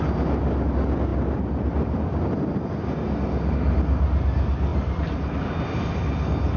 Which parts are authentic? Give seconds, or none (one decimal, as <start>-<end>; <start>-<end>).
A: 0.0-6.6